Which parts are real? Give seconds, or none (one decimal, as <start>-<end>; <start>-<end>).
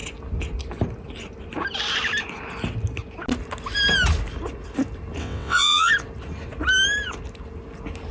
0.0-5.2; 5.9-8.1